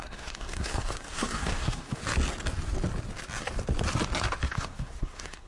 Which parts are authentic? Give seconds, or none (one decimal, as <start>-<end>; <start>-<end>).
2.0-4.5